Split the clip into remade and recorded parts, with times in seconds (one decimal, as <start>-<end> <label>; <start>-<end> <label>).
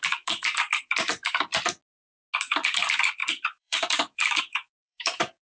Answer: 0.0-1.5 remade; 1.5-2.4 recorded; 2.4-5.5 remade